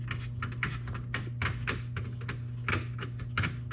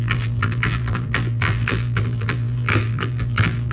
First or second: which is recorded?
first